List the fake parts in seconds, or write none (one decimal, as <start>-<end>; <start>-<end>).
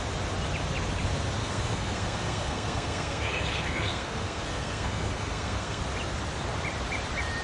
1.4-5.8